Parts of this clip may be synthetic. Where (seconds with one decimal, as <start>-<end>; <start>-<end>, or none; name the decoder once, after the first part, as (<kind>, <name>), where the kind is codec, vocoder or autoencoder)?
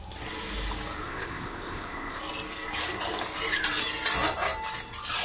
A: 1.0-2.2 (codec, ZipCodec)